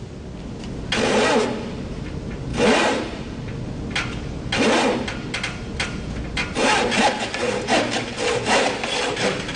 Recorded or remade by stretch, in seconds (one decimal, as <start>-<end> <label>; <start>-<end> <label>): 0.0-9.6 recorded